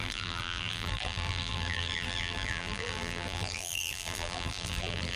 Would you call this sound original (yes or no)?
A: no